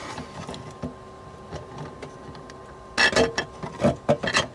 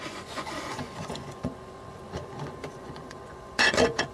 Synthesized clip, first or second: second